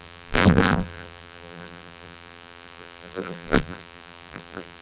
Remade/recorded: remade